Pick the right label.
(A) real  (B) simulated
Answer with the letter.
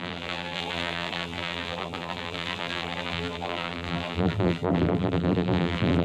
B